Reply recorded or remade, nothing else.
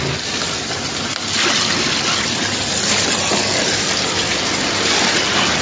recorded